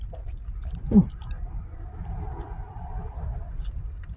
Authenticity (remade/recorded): recorded